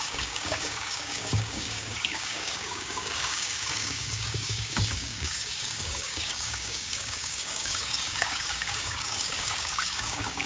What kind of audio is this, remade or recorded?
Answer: remade